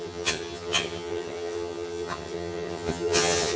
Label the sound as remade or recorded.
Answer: remade